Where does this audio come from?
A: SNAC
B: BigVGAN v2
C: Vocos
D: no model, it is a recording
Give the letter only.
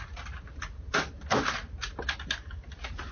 D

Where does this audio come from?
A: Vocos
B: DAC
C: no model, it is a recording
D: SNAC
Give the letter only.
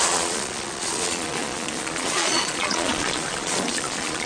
A